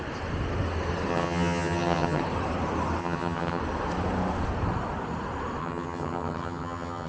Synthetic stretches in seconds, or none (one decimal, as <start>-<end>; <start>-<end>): 1.1-2.2; 3.0-3.6; 5.6-7.1